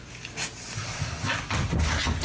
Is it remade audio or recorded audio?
recorded